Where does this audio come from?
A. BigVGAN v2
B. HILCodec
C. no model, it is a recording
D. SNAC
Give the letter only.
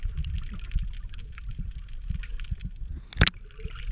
C